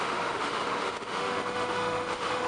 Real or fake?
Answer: fake